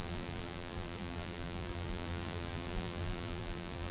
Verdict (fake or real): fake